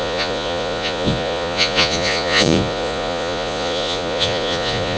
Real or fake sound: fake